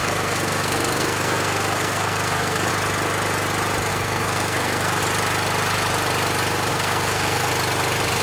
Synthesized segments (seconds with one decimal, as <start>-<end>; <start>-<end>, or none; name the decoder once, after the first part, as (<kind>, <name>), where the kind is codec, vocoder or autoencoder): 0.0-2.7 (codec, SNAC); 3.9-5.0; 6.7-7.5